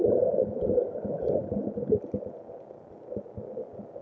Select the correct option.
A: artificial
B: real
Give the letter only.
B